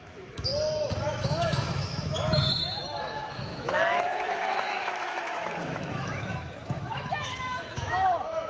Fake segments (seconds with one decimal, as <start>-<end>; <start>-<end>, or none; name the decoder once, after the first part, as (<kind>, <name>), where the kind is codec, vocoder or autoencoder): 0.0-0.5 (autoencoder, DAC-VAE); 1.0-8.5